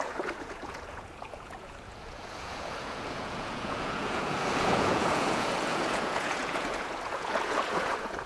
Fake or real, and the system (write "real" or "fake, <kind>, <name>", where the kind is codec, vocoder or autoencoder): fake, vocoder, Vocos